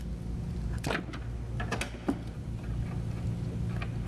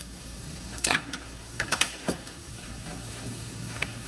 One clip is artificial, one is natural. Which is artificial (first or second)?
second